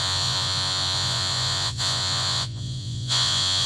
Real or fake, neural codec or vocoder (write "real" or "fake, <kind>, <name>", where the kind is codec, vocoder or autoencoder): fake, vocoder, Vocos